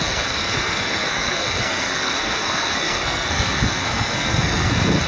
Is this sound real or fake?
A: fake